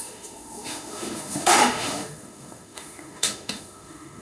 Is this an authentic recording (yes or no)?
no